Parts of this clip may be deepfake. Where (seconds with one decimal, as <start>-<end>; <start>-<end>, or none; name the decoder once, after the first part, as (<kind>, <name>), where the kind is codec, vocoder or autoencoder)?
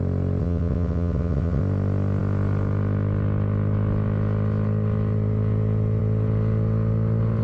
0.4-1.6 (vocoder, WaveNeXt)